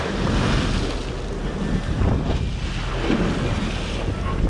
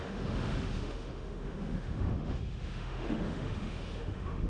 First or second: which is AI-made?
second